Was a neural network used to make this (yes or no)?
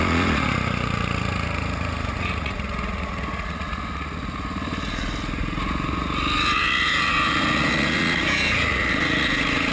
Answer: yes